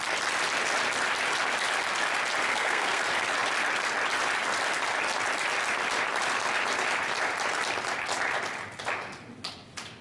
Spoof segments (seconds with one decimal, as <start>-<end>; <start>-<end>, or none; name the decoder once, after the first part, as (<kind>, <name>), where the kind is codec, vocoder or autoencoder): 2.5-3.0 (codec, SNAC)